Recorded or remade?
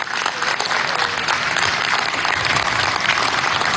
recorded